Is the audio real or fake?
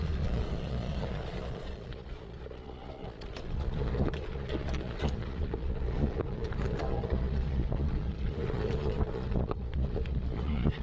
fake